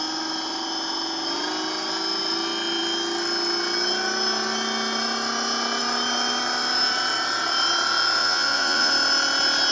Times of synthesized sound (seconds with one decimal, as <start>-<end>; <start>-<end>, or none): 8.2-8.9